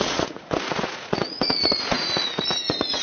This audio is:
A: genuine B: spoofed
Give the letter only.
B